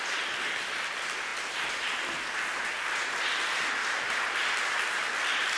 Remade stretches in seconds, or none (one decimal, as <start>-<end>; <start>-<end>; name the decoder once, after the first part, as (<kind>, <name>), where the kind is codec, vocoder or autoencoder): none